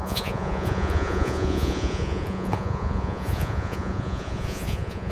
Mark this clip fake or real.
fake